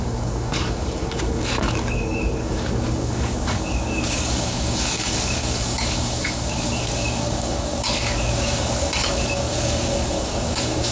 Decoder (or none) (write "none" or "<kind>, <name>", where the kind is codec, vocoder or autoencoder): codec, DAC